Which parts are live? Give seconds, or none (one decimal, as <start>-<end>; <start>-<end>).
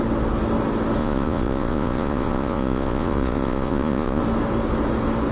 0.0-1.0; 4.2-5.3